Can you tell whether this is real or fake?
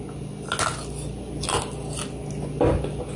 real